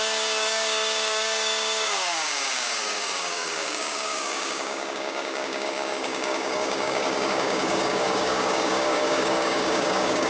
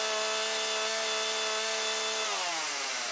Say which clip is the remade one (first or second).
first